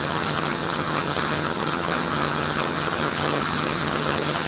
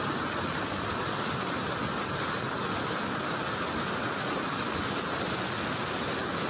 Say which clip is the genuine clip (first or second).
second